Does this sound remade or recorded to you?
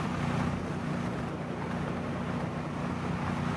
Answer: recorded